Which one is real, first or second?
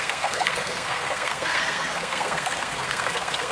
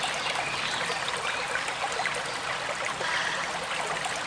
second